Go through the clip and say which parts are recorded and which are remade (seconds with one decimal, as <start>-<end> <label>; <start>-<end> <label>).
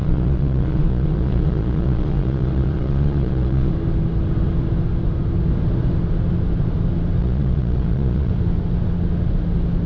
0.0-3.7 remade; 3.7-7.2 recorded; 7.2-8.3 remade; 8.3-9.9 recorded